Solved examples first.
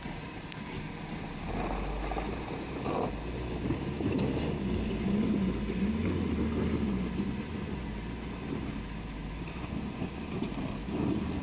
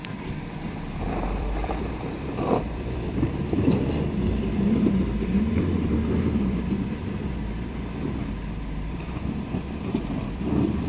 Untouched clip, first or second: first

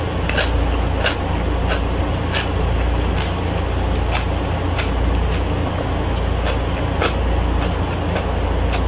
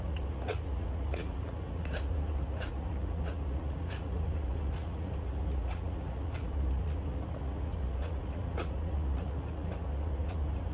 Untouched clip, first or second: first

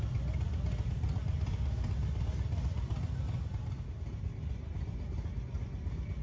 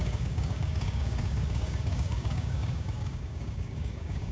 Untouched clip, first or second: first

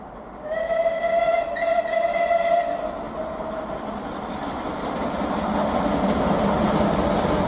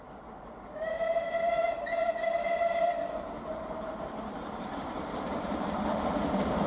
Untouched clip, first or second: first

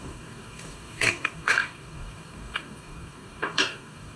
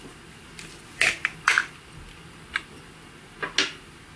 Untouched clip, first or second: second